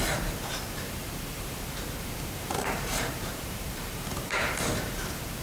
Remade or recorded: remade